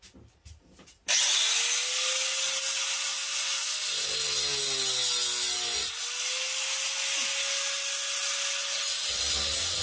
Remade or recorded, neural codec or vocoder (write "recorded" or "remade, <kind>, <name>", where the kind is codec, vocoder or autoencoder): recorded